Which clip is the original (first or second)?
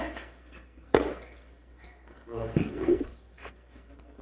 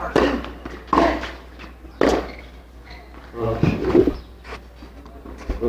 second